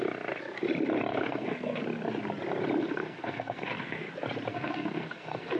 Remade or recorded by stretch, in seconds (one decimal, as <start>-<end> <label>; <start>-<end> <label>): 0.0-1.1 recorded; 1.1-1.8 remade; 1.8-2.8 recorded; 2.8-4.1 remade; 4.1-4.5 recorded; 4.5-5.6 remade